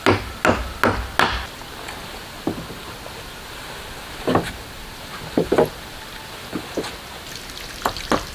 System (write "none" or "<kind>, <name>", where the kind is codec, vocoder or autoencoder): none